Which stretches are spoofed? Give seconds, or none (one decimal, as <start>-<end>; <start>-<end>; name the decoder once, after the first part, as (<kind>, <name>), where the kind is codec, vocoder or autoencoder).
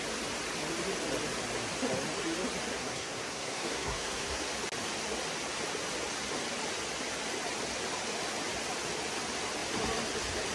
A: 2.7-4.4 (codec, SNAC)